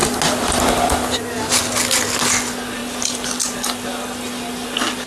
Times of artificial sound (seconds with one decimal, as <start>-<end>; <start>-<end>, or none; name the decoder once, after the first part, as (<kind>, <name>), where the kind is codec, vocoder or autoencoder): none